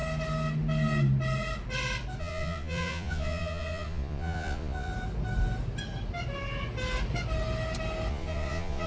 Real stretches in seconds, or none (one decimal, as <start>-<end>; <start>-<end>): 0.0-2.2; 4.9-8.1